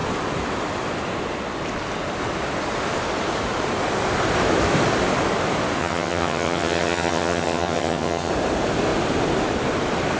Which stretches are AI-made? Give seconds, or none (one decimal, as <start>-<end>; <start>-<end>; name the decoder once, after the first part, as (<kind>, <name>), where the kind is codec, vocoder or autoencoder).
5.8-8.3 (vocoder, HiFi-GAN)